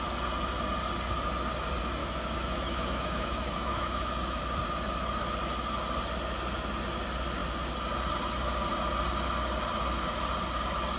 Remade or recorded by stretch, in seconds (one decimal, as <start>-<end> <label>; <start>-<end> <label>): 0.0-2.0 recorded; 2.0-4.4 remade; 4.4-11.0 recorded